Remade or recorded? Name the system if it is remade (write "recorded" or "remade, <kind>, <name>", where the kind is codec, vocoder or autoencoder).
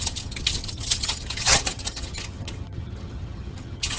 remade, vocoder, HiFi-GAN